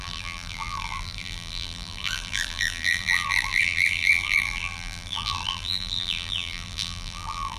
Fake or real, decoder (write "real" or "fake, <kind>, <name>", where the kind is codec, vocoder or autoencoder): fake, vocoder, BigVGAN v2